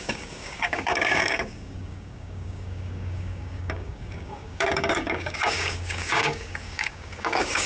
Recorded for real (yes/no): no